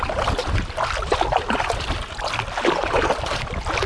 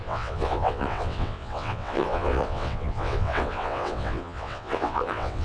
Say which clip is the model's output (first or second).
second